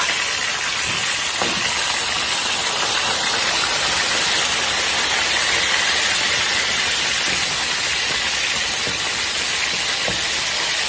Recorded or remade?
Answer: recorded